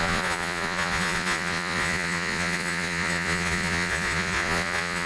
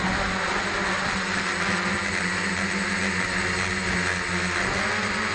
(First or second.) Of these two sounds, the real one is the second